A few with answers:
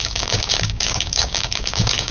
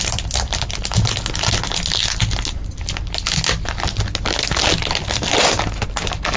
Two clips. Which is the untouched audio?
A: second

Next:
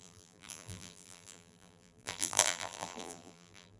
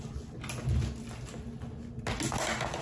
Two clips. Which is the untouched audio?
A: second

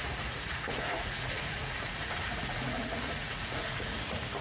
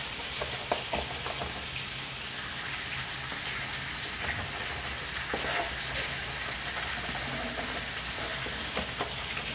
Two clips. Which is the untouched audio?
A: second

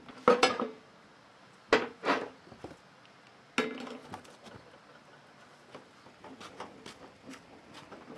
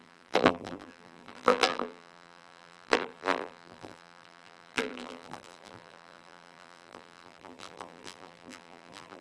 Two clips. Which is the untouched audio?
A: first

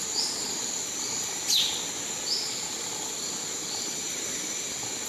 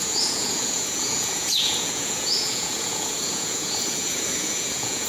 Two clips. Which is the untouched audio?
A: first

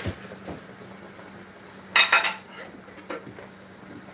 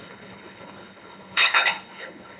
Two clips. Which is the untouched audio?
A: first